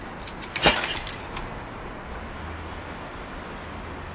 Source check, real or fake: real